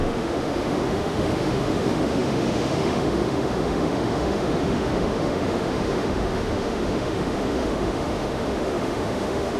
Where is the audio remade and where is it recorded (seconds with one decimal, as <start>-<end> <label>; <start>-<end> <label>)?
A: 0.0-9.6 remade